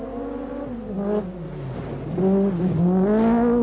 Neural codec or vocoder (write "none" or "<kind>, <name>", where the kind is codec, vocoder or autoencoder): none